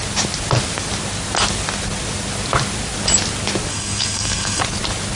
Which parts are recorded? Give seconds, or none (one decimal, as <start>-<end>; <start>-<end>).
0.0-3.7; 4.6-5.2